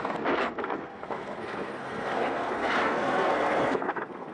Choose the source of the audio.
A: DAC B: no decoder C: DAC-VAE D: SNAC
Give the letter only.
D